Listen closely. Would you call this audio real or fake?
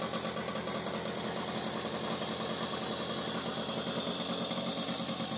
real